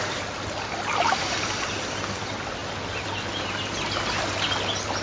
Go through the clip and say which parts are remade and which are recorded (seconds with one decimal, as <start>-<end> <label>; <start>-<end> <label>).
0.0-5.0 recorded